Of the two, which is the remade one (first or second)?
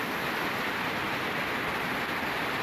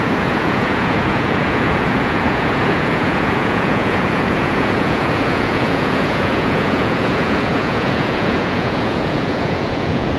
second